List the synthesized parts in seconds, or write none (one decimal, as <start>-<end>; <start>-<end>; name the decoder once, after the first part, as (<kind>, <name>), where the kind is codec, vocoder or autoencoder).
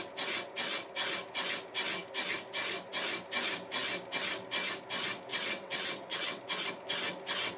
5.3-6.4 (vocoder, WaveNeXt)